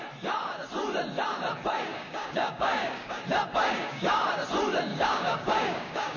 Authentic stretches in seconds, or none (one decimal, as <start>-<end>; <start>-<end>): 0.0-1.9; 3.2-3.6; 4.2-4.9